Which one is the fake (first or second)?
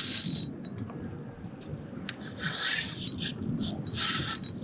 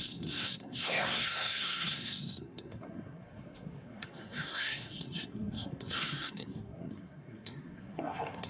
second